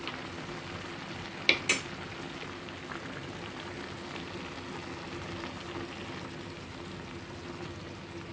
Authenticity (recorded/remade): recorded